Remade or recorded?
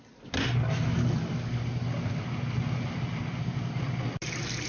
recorded